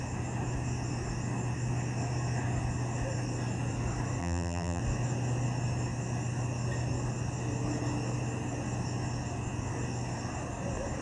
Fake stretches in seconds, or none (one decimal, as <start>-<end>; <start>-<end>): 4.2-4.8